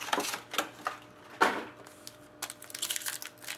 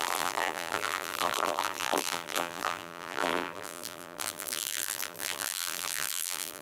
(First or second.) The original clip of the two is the first